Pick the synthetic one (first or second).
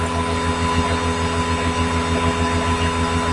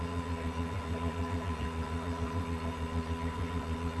second